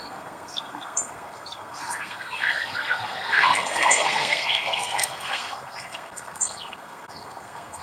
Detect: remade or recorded remade